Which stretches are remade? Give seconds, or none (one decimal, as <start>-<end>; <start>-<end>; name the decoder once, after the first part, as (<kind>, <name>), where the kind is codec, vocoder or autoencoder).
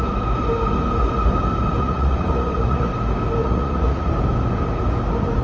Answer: 1.8-2.9 (vocoder, Vocos); 3.4-4.1